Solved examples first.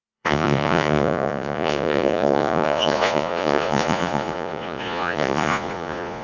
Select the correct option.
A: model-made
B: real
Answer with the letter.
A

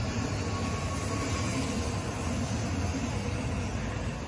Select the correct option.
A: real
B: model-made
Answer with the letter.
A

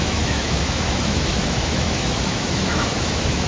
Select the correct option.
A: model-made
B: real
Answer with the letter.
A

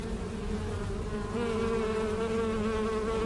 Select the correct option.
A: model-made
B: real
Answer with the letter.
B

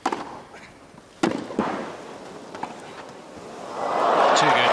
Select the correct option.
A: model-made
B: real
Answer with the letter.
B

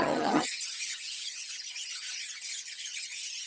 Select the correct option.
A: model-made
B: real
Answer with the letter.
A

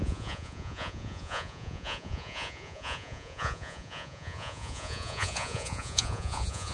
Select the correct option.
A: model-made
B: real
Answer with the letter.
A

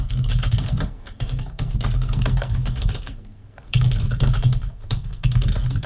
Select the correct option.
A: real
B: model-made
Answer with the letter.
B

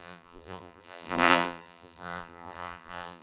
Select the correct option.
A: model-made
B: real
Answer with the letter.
A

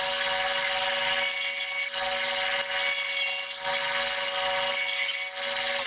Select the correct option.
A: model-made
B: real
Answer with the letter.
B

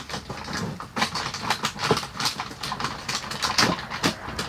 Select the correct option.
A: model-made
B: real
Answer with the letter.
B